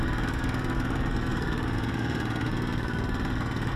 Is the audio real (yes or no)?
no